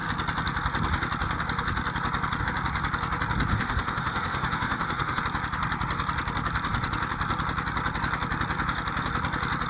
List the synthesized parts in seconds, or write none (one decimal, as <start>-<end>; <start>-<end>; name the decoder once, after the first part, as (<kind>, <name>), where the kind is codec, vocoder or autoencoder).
3.5-5.2 (autoencoder, DAC-VAE)